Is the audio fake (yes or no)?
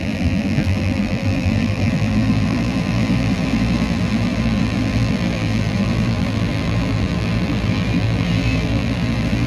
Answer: yes